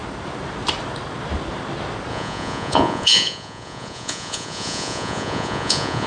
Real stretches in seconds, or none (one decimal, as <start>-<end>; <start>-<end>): 0.0-2.1